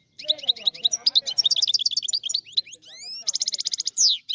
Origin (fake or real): real